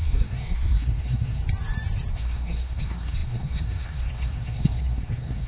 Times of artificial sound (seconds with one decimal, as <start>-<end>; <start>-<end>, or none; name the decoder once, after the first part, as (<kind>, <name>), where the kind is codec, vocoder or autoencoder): 0.0-1.4 (codec, SNAC); 2.1-5.5